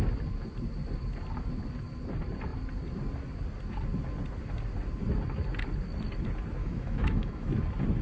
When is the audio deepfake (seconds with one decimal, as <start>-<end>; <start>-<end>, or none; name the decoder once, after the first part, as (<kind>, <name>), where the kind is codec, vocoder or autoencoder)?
6.6-7.5 (autoencoder, DAC-VAE)